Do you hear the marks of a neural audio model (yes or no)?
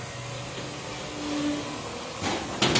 no